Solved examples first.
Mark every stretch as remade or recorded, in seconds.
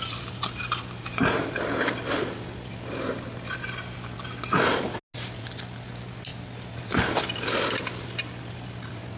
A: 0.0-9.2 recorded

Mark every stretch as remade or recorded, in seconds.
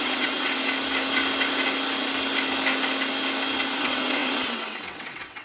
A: 0.0-0.6 remade; 0.6-3.8 recorded; 3.8-5.4 remade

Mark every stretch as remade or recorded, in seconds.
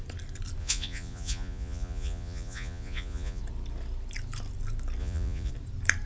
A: 0.0-0.6 recorded; 0.6-3.4 remade; 3.4-5.0 recorded; 5.0-5.5 remade; 5.5-6.1 recorded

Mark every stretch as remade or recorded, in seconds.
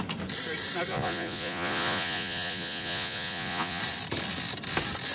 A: 0.0-0.9 recorded; 0.9-3.8 remade; 3.8-5.1 recorded